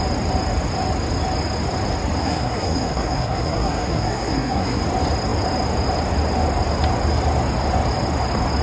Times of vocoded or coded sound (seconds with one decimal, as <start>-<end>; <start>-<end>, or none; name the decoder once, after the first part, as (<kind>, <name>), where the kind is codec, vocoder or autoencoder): 2.2-4.8 (codec, SNAC)